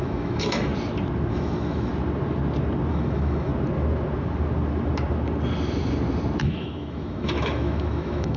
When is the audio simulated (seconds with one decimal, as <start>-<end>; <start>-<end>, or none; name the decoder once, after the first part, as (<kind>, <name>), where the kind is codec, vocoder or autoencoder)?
0.0-0.7 (autoencoder, DAC-VAE); 1.3-1.9; 2.9-3.5; 6.4-8.4